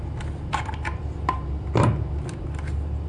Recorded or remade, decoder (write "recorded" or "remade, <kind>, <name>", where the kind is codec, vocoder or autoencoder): recorded